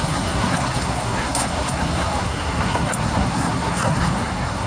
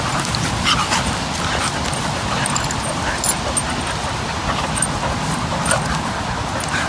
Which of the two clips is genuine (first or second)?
second